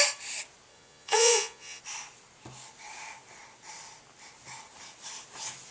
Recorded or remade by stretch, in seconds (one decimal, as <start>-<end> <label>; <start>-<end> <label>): 0.0-0.7 recorded; 0.7-1.8 remade; 1.8-5.7 recorded